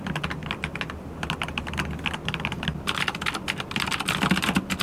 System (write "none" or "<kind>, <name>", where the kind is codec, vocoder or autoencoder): none